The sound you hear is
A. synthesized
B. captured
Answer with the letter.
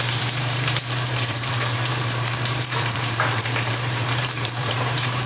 A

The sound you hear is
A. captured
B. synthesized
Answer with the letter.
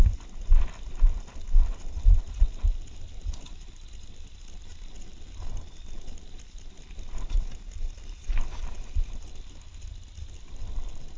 A